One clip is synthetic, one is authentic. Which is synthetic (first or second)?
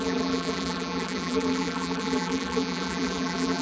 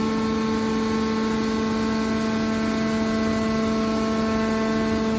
first